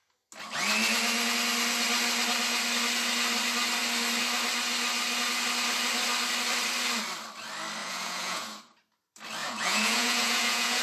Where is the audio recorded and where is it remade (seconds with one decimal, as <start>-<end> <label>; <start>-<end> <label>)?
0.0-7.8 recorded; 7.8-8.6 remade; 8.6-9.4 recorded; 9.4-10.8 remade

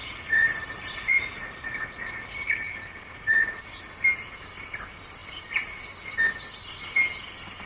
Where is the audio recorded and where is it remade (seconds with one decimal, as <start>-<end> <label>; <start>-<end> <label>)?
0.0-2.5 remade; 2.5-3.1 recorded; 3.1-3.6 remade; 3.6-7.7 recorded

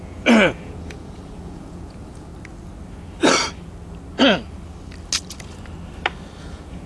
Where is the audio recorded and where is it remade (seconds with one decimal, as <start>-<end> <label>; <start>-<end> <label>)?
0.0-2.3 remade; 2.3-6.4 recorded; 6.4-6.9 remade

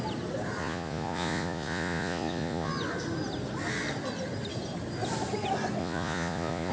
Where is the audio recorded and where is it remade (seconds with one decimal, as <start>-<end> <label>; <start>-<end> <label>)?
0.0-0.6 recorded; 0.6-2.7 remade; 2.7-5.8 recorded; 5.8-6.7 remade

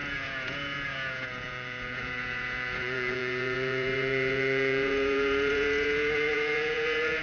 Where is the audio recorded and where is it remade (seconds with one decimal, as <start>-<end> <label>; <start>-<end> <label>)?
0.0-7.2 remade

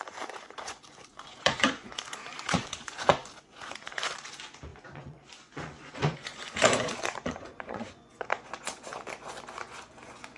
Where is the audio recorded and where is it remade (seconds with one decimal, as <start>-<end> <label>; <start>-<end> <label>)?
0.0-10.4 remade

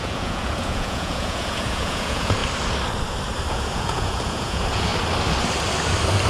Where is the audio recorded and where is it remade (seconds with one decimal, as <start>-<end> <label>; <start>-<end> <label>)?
0.0-2.4 remade; 2.4-3.5 recorded; 3.5-4.9 remade; 4.9-6.3 recorded